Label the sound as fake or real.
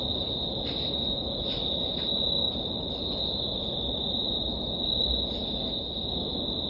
real